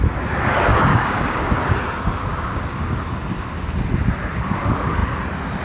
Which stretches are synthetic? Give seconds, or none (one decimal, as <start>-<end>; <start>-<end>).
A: 0.9-1.6; 2.3-3.0